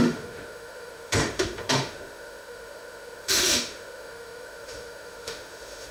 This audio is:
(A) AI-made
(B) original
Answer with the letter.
A